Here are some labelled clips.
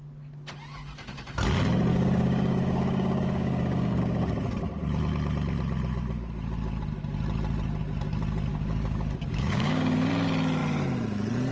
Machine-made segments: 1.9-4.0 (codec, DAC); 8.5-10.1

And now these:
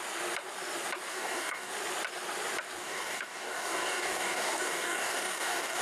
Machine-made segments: 1.1-1.7 (codec, DAC); 2.8-5.8

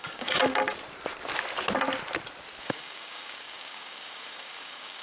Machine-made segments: 0.0-0.4 (codec, DAC); 2.6-5.0

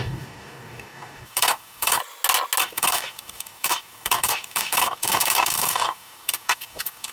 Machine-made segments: 0.0-2.0 (codec, DAC); 2.6-7.1

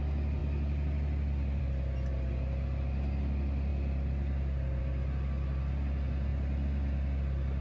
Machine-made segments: none

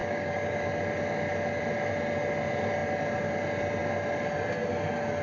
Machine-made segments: 0.0-0.7 (codec, DAC)